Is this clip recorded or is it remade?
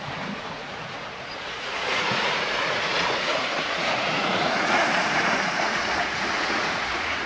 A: remade